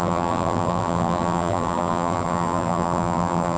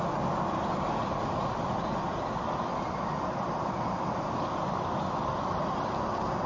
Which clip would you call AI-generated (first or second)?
first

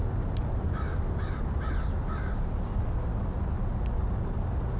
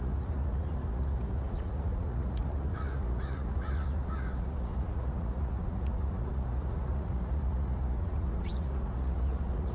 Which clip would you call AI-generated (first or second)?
second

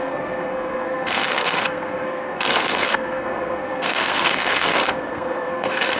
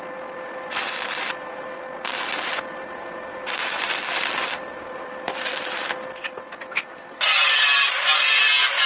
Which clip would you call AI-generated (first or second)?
first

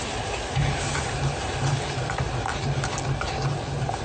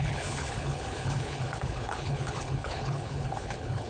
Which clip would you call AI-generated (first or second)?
second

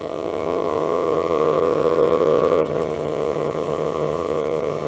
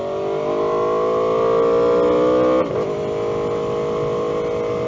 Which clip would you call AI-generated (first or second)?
first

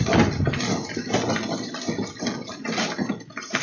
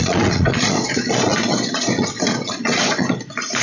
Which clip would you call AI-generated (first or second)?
second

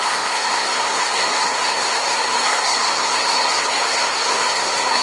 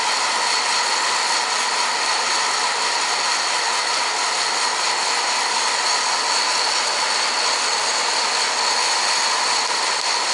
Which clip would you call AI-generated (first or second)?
first